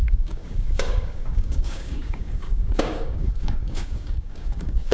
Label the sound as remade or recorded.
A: remade